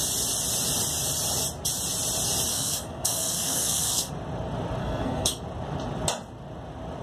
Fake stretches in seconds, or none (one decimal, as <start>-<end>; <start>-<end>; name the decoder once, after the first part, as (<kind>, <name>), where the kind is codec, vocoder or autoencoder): 2.5-4.1 (codec, SNAC); 4.8-5.4